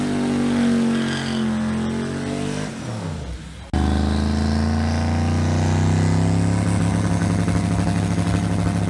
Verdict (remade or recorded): recorded